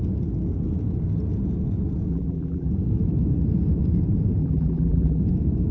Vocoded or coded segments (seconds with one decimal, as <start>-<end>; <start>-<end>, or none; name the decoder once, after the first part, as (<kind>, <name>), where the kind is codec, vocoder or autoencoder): 2.1-2.7 (vocoder, BigVGAN v2); 4.4-5.2